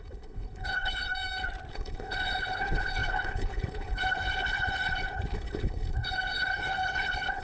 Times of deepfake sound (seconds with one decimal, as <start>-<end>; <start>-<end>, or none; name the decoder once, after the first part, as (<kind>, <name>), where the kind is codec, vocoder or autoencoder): 0.0-1.1 (codec, HILCodec); 1.7-7.4